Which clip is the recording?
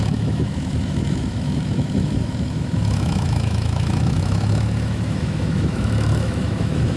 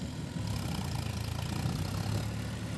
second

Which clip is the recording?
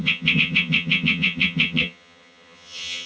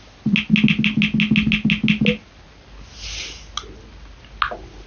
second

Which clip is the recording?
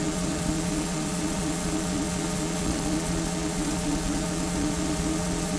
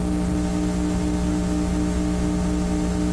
second